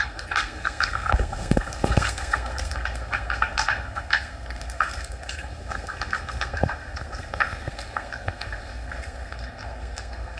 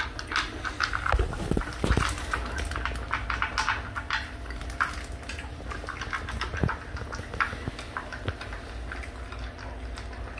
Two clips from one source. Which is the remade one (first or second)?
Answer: first